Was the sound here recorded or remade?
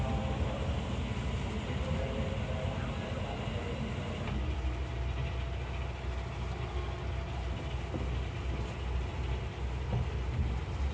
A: recorded